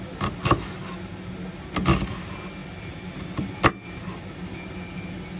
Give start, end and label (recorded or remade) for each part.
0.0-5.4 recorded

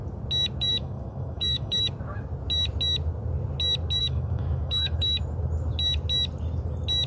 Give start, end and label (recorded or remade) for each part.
0.0-0.7 recorded; 0.7-1.9 remade; 1.9-4.0 recorded; 4.0-5.2 remade; 5.2-7.1 recorded

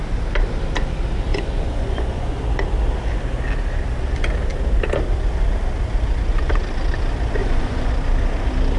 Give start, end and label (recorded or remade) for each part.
0.0-1.3 recorded; 1.3-2.4 remade; 2.4-7.4 recorded; 7.4-7.9 remade; 7.9-8.8 recorded

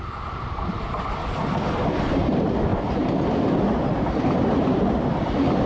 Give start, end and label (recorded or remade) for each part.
0.0-5.7 recorded